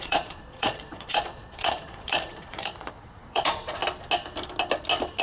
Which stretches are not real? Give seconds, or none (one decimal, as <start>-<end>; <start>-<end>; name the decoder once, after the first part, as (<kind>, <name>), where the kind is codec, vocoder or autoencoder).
0.0-3.8 (vocoder, Vocos)